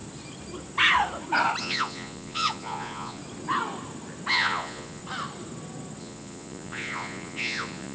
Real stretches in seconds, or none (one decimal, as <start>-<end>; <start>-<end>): 0.0-1.6; 3.2-4.3; 5.0-6.0